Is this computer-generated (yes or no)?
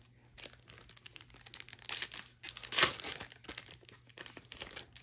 no